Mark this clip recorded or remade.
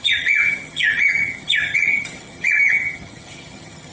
remade